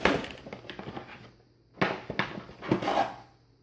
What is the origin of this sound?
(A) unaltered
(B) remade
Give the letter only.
A